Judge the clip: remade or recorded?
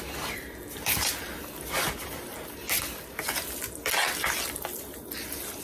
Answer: recorded